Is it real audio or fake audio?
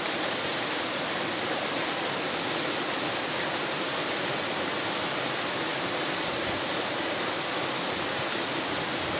real